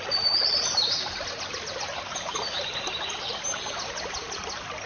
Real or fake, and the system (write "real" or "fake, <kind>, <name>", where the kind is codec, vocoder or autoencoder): real